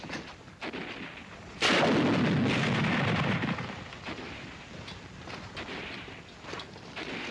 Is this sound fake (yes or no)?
no